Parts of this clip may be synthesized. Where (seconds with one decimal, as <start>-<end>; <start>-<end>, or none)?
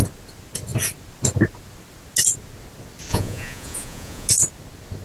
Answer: 3.1-4.3